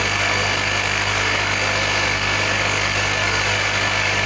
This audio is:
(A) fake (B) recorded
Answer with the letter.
A